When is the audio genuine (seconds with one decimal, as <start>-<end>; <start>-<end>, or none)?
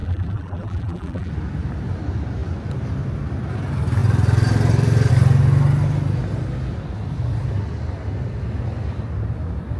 1.3-9.8